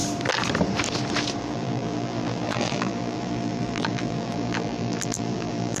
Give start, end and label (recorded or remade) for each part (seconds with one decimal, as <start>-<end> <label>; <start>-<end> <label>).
0.0-1.4 recorded; 1.4-5.8 remade